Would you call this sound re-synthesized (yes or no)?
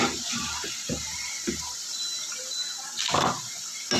yes